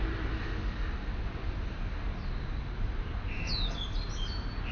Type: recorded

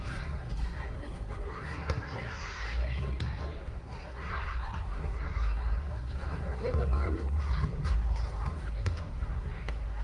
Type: remade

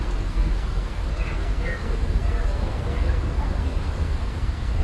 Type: remade